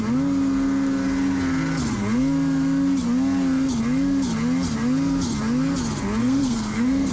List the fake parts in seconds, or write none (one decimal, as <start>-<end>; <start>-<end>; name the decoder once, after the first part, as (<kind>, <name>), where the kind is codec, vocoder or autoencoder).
6.2-7.1 (codec, SNAC)